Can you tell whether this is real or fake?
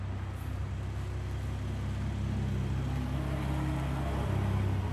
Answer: real